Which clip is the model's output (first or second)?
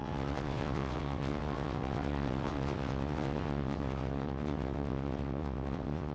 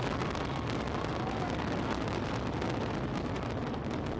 first